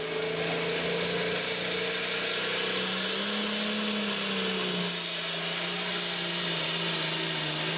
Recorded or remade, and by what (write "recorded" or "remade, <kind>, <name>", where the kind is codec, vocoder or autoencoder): recorded